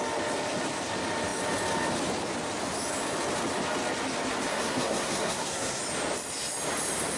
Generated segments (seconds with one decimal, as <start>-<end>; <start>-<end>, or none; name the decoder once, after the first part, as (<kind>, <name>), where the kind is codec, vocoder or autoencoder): 4.5-5.8 (codec, SNAC)